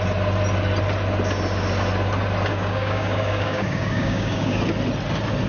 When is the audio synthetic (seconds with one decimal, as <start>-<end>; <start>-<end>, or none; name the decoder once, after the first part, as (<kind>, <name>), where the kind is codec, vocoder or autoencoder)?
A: 2.5-4.6 (codec, DAC)